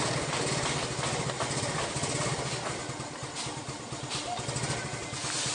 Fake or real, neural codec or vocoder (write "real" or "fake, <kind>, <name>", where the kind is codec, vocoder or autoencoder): real